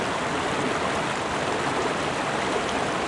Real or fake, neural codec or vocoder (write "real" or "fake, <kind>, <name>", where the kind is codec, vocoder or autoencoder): real